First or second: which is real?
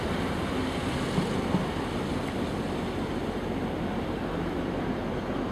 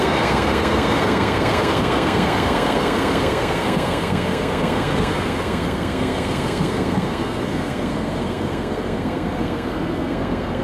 first